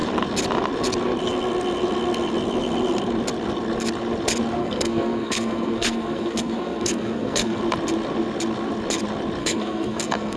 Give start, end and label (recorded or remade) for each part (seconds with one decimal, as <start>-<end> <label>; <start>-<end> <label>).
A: 0.0-4.6 recorded; 4.6-7.6 remade; 7.6-9.4 recorded; 9.4-10.4 remade